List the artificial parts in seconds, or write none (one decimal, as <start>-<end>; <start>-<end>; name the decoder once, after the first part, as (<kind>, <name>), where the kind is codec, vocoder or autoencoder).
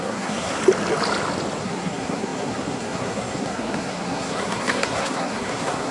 0.0-0.6 (codec, SNAC); 1.6-5.9